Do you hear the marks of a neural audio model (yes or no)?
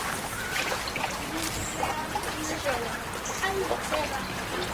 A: no